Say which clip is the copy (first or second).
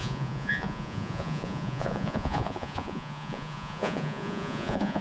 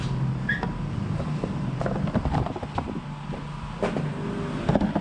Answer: first